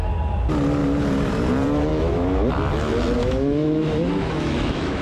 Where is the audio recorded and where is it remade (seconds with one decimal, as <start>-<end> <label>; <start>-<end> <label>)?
0.0-1.9 recorded; 1.9-2.5 remade; 2.5-3.2 recorded; 3.2-5.0 remade